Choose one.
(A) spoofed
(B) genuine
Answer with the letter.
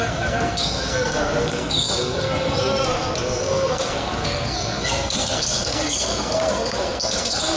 A